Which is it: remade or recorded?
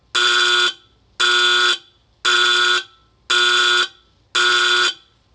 recorded